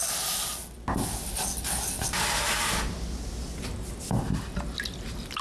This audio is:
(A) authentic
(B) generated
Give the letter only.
A